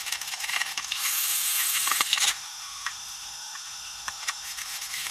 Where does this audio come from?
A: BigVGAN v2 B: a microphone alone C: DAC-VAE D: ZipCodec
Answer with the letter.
C